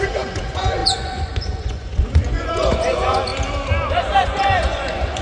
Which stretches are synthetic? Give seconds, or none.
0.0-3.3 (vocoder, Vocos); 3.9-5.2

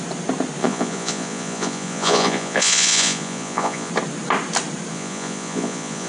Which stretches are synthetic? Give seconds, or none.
0.6-3.9 (vocoder, Vocos); 4.9-6.1

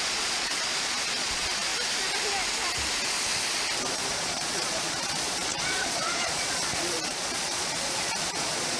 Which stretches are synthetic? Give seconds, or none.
0.0-1.7 (vocoder, Vocos); 3.9-8.8

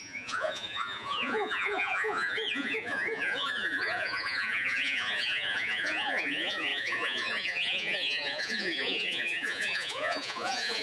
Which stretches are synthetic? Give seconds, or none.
0.0-10.8 (vocoder, Vocos)

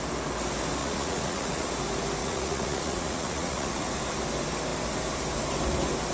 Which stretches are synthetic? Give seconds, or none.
0.8-1.7 (vocoder, Vocos); 2.2-3.9

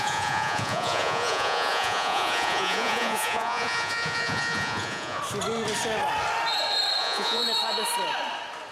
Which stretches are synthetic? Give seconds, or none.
0.0-5.2 (vocoder, Vocos); 7.0-7.4

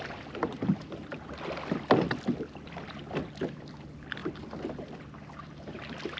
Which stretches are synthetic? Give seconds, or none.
none